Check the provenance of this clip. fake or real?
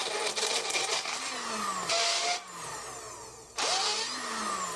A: real